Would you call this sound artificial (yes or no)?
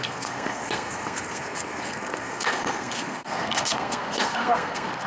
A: yes